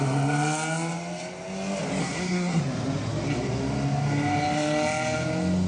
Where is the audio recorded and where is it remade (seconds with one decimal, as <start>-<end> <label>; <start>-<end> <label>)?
0.0-2.0 recorded; 2.0-2.6 remade; 2.6-5.7 recorded